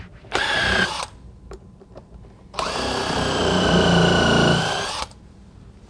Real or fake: fake